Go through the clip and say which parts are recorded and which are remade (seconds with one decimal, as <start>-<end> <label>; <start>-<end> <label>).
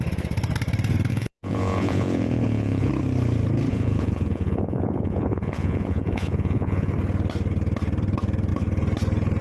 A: 0.0-1.1 recorded; 1.1-2.9 remade; 2.9-3.7 recorded; 3.7-6.9 remade; 6.9-9.4 recorded